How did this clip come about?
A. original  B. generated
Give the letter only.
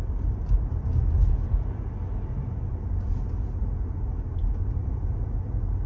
A